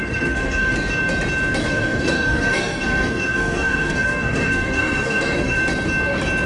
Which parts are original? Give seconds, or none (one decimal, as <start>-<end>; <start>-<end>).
0.7-1.6; 5.6-6.5